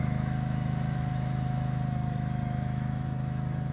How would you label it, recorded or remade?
remade